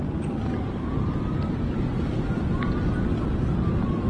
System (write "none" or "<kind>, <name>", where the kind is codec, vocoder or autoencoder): none